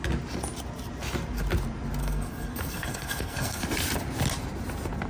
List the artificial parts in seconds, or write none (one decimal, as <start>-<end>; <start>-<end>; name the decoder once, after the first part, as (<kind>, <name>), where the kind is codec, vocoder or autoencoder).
2.0-3.6 (codec, SNAC)